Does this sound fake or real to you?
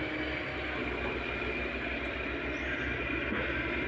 real